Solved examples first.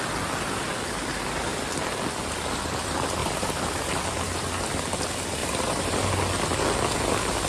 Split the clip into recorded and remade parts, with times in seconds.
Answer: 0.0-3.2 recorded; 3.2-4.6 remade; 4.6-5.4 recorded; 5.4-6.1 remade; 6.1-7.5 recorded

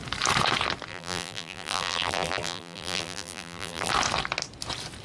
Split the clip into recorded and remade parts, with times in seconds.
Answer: 0.0-0.9 recorded; 0.9-3.9 remade; 3.9-5.0 recorded

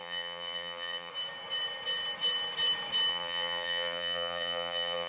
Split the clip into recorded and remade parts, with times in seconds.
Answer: 0.0-1.1 remade; 1.1-3.1 recorded; 3.1-5.1 remade

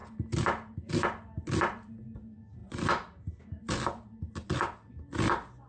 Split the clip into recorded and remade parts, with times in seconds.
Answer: 0.0-5.7 recorded